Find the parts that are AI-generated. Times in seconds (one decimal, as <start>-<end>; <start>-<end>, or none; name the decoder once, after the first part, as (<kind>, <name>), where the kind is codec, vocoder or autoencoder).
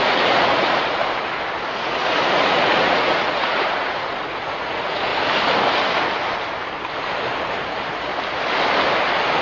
0.0-1.0 (vocoder, Vocos); 1.7-5.1; 7.6-8.1